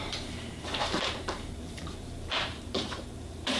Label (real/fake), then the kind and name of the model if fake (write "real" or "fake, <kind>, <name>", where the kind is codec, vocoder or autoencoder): fake, vocoder, BigVGAN v2